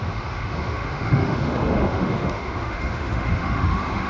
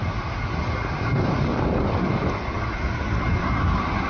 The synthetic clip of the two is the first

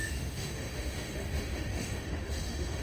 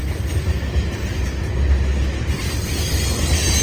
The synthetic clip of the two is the first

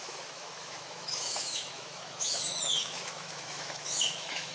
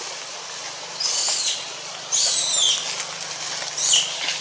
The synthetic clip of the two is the first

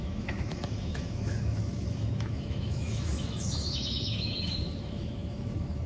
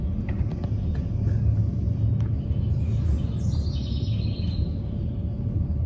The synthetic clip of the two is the first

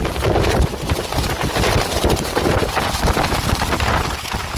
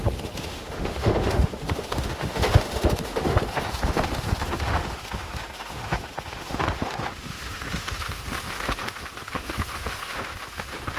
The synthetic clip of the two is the second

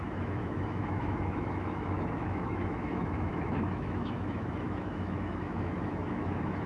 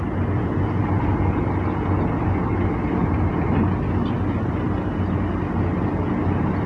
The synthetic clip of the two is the first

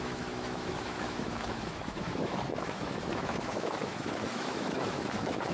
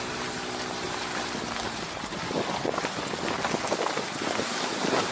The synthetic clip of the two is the first